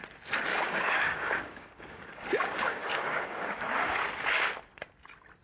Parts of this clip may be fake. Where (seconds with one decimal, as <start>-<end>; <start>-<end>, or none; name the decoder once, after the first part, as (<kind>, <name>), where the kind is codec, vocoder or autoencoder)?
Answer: 0.5-3.7 (codec, DAC)